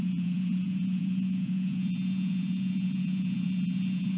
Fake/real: fake